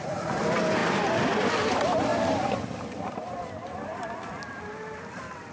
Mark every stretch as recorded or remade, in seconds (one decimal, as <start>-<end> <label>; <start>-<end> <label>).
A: 0.0-2.1 recorded; 2.1-4.0 remade; 4.0-5.5 recorded